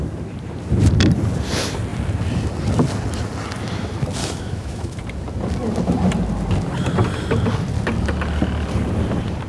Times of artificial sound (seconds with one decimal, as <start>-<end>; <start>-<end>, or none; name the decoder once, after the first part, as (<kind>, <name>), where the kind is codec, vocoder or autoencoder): 4.2-5.0 (autoencoder, DAC-VAE)